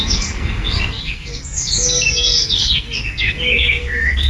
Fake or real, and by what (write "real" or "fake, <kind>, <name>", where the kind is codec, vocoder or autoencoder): fake, codec, SNAC